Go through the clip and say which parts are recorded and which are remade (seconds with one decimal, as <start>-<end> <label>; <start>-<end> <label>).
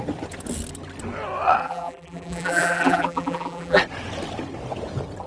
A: 0.0-1.6 recorded; 1.6-3.8 remade; 3.8-5.3 recorded